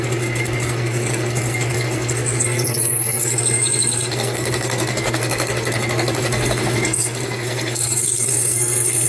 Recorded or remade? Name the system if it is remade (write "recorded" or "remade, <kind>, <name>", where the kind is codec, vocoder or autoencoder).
remade, codec, SNAC